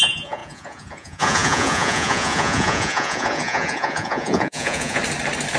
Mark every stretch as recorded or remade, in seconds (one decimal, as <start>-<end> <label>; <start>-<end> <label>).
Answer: 0.0-5.0 remade; 5.0-5.6 recorded